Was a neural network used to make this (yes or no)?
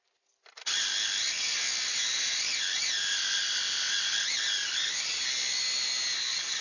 no